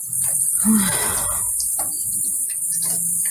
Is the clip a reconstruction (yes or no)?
no